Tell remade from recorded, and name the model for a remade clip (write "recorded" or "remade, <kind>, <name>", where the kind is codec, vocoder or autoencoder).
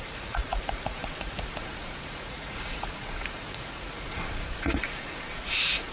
remade, vocoder, Vocos